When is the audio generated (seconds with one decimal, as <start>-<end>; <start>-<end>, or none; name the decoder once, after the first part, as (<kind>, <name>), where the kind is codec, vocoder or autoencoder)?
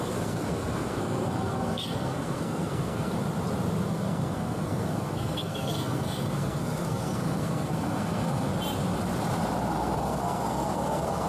0.0-3.1 (codec, SNAC); 3.9-8.5; 9.7-11.3